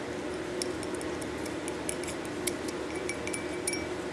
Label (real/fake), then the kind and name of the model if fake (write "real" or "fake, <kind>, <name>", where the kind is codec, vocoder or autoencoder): real